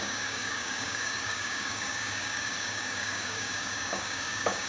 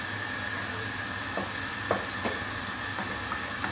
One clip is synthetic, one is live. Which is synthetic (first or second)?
first